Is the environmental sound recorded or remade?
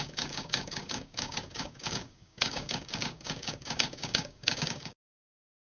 remade